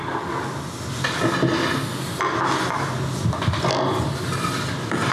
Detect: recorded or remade recorded